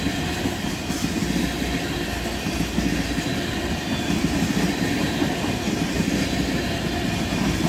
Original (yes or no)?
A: yes